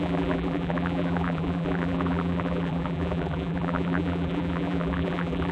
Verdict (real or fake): fake